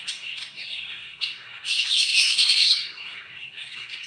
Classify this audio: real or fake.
fake